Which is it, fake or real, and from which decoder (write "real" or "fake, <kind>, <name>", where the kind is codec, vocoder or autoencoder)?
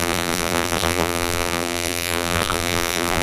fake, vocoder, BigVGAN v2